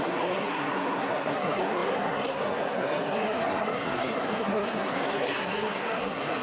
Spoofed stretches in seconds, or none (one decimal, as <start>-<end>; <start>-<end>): 0.0-6.4